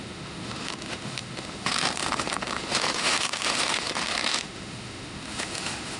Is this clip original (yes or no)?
no